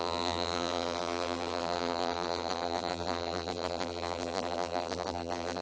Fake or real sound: fake